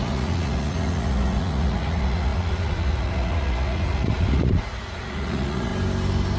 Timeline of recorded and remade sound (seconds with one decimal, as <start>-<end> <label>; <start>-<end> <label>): 0.0-5.7 remade; 5.7-6.4 recorded